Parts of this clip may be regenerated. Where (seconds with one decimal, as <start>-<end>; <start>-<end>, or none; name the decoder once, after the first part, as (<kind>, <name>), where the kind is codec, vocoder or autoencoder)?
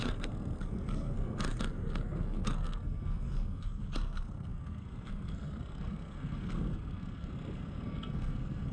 0.0-8.7 (codec, SNAC)